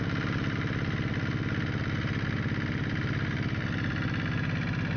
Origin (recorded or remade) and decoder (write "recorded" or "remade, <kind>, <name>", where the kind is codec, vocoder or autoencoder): recorded